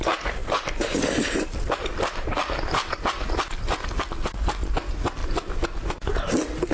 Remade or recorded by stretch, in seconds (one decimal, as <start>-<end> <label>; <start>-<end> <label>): 0.0-0.4 recorded; 0.4-4.4 remade; 4.4-6.7 recorded

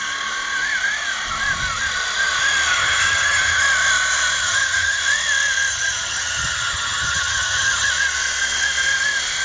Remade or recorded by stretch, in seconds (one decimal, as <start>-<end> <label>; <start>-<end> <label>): 0.0-2.7 recorded; 2.7-3.6 remade; 3.6-4.4 recorded; 4.4-5.0 remade; 5.0-5.7 recorded; 5.7-7.9 remade; 7.9-9.4 recorded

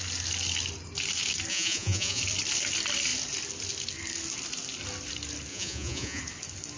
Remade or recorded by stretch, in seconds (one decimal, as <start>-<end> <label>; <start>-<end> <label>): 0.0-1.5 recorded; 1.5-2.2 remade; 2.2-5.5 recorded; 5.5-6.2 remade; 6.2-6.8 recorded

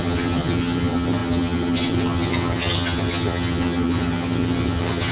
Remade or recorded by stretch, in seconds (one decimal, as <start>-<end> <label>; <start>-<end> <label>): 0.0-5.1 remade